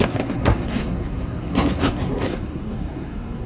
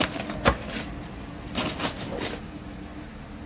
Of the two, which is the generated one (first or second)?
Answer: first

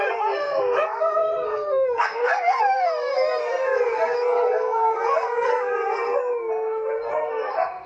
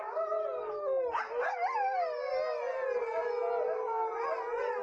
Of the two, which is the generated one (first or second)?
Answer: first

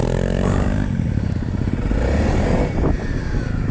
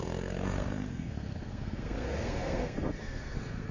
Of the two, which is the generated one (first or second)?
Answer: second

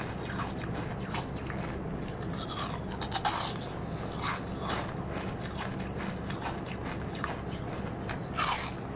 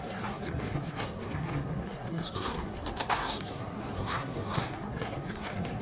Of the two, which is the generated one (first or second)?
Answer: second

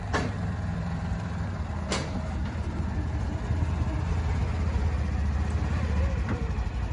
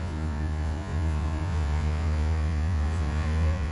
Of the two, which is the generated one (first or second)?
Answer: second